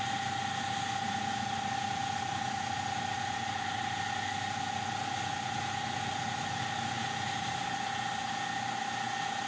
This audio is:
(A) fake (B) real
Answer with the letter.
B